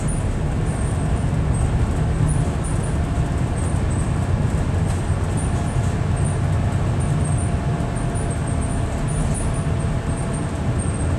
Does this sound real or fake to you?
real